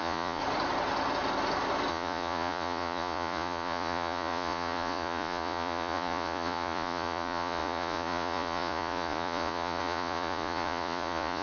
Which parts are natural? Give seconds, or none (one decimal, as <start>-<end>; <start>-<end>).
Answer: 0.4-1.9